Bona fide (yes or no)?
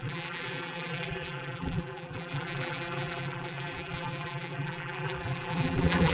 no